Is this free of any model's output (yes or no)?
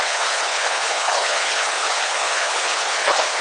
no